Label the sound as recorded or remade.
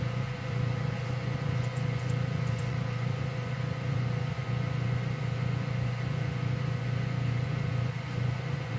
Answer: remade